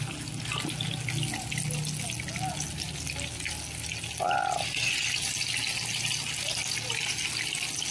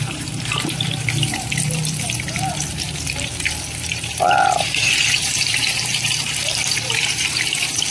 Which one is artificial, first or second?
second